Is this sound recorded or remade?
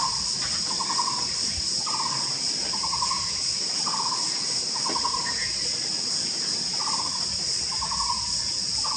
recorded